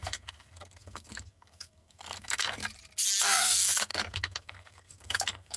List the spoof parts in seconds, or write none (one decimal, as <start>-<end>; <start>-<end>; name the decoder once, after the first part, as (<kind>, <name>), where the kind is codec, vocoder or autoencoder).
0.0-2.6 (codec, SNAC); 3.2-5.6